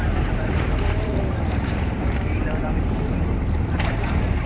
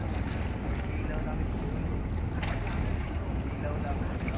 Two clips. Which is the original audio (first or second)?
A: second